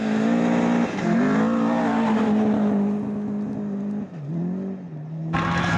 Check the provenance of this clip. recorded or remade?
recorded